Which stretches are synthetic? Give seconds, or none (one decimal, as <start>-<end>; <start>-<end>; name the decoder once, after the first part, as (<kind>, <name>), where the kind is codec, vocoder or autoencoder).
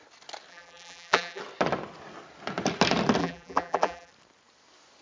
0.5-1.4 (vocoder, BigVGAN v2); 3.2-4.1